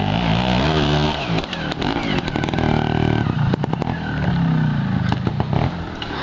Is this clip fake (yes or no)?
yes